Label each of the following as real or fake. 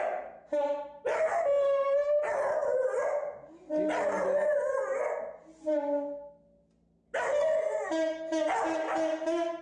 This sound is real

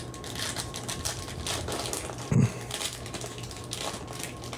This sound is real